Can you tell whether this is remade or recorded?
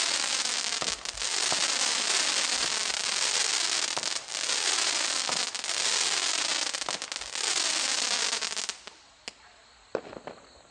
recorded